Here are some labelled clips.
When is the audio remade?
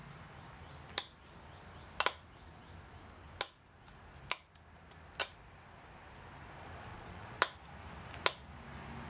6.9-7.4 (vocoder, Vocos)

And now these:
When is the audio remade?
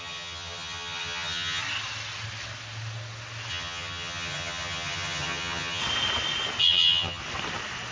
0.0-1.6 (vocoder, HiFi-GAN); 3.5-5.8; 6.6-7.2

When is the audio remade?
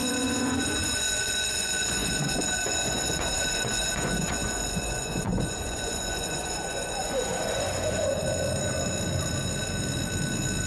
0.0-8.2 (vocoder, Vocos)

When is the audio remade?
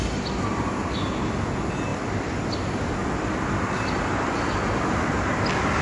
none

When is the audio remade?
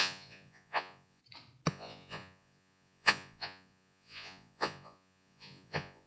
0.0-1.2 (vocoder, Vocos); 1.7-6.1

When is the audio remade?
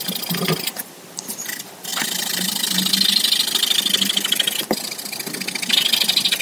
none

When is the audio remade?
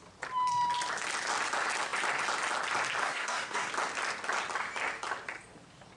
3.0-3.7 (codec, SNAC)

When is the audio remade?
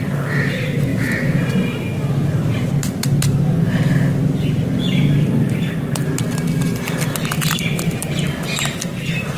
none